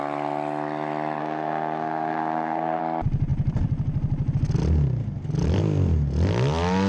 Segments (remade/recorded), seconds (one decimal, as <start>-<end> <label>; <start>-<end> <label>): 0.0-1.2 recorded; 1.2-2.8 remade; 2.8-6.9 recorded